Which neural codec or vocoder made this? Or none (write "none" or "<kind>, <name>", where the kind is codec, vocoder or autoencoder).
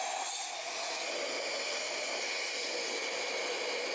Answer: none